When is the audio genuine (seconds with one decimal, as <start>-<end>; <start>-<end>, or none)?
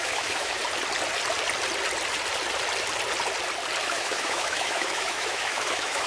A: 0.6-3.8